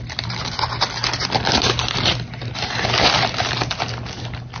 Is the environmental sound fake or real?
real